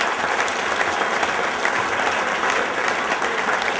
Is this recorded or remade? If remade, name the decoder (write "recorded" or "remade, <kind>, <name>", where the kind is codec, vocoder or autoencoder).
recorded